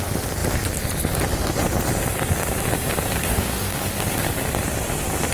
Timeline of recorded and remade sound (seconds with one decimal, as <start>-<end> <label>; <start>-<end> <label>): 0.0-3.2 recorded; 3.2-3.9 remade; 3.9-5.3 recorded